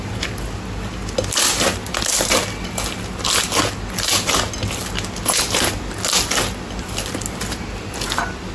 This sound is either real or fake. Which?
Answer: real